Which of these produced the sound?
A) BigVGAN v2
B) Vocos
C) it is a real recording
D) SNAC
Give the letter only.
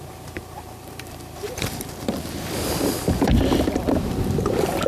A